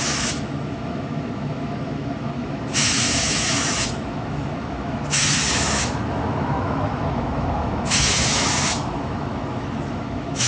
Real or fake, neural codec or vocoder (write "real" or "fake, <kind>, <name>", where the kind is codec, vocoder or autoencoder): fake, autoencoder, DAC-VAE